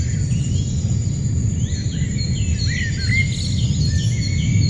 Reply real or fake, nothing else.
real